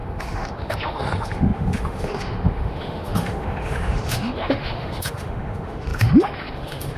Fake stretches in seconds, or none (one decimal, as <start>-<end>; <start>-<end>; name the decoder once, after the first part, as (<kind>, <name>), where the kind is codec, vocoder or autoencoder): 0.0-7.0 (autoencoder, DAC-VAE)